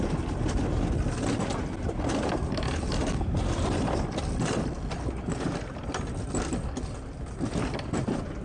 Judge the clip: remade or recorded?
recorded